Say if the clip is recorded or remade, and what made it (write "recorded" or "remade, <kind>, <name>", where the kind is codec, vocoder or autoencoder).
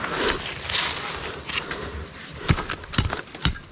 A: remade, vocoder, BigVGAN v2